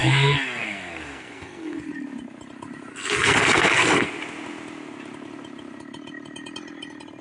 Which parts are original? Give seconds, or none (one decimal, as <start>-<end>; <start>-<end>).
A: 1.8-2.9; 4.1-7.2